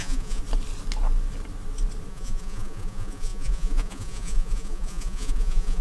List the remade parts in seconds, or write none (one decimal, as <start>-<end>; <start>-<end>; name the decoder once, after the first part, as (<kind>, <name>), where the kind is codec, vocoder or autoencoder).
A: 0.0-0.4 (vocoder, Vocos); 2.1-5.8

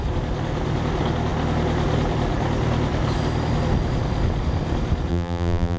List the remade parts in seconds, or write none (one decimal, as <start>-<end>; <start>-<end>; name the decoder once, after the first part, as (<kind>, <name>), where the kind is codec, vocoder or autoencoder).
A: 5.1-5.8 (vocoder, BigVGAN v2)

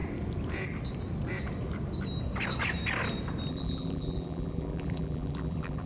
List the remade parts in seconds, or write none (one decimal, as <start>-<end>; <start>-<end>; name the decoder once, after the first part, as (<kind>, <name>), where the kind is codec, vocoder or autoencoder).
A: 3.5-5.9 (vocoder, BigVGAN v2)

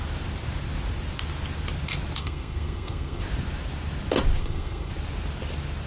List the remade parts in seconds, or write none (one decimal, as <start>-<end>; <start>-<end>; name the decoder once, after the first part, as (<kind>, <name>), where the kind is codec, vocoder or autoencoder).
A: 2.2-3.2 (codec, SNAC); 4.4-4.9

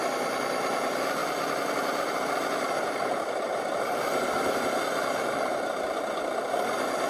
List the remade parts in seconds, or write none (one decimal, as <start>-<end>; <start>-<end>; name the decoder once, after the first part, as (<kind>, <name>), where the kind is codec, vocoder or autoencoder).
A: none

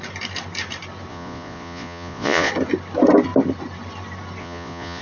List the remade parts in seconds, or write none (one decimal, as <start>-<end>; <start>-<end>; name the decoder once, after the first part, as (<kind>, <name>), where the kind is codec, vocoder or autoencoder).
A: 1.1-2.5 (vocoder, Vocos); 4.4-5.0